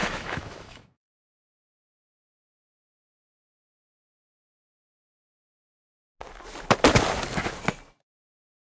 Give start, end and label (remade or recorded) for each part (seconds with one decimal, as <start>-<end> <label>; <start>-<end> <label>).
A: 0.0-3.4 remade; 3.4-8.8 recorded